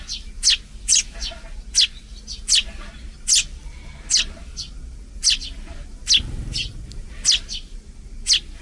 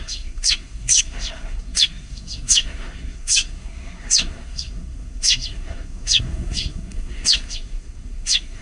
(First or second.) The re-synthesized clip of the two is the second